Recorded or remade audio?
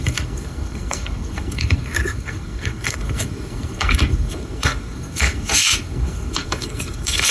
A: remade